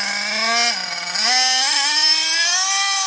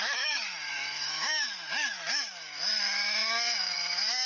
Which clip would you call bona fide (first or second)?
first